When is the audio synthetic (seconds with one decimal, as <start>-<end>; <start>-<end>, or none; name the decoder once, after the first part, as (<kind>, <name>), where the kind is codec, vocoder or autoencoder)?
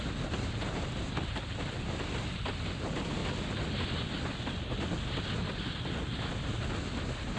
none